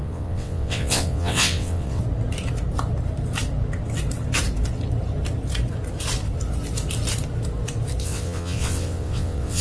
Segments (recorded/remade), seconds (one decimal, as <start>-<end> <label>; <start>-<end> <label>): 0.0-2.0 remade; 2.0-8.0 recorded; 8.0-9.6 remade